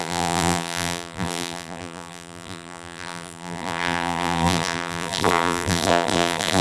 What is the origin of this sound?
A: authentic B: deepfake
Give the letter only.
B